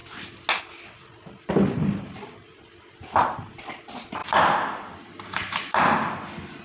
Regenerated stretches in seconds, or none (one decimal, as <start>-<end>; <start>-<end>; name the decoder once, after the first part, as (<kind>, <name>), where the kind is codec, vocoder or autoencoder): none